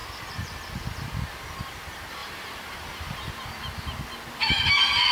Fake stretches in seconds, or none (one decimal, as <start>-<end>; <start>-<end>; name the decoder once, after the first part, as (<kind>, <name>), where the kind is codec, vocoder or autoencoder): 0.0-1.3 (vocoder, BigVGAN v2); 2.2-3.3